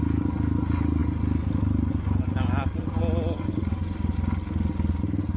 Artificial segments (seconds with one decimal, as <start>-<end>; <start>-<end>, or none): none